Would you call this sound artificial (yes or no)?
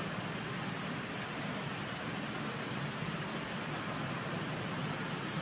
no